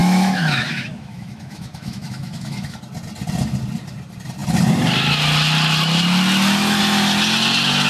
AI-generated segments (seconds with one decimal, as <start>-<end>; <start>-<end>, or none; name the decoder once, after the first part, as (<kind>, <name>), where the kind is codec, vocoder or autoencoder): 0.0-2.8 (autoencoder, DAC-VAE)